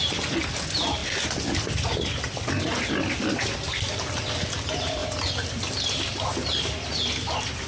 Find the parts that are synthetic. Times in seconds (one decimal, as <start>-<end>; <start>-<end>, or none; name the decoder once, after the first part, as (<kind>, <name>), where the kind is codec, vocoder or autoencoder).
none